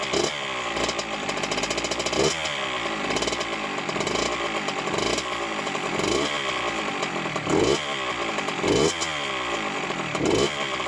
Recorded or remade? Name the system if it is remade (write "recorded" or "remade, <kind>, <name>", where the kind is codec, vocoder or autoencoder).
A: recorded